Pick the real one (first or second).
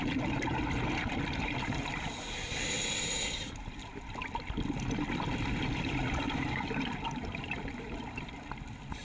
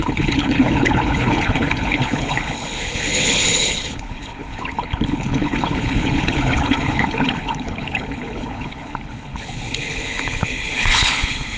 first